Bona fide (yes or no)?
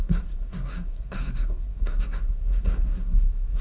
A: no